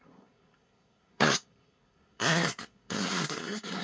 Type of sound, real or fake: fake